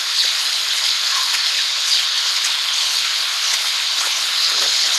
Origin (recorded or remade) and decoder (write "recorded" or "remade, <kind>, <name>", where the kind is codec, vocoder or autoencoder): remade, codec, HILCodec